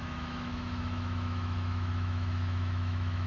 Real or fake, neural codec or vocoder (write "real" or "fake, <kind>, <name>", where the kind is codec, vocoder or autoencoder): fake, autoencoder, DAC-VAE